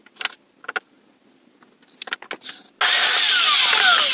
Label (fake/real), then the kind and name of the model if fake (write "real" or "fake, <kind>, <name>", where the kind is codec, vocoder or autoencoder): real